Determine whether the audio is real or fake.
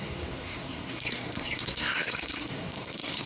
fake